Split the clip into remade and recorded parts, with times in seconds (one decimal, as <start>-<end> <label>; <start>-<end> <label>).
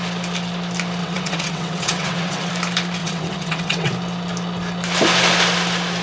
0.0-1.0 recorded; 1.0-2.5 remade; 2.5-3.0 recorded; 3.0-3.9 remade; 3.9-6.0 recorded